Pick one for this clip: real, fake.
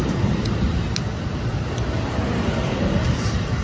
real